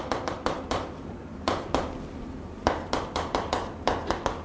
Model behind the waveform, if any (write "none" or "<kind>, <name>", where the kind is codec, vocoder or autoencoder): vocoder, BigVGAN v2